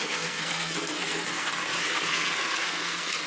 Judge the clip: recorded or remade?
remade